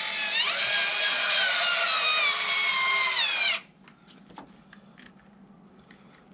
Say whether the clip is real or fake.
real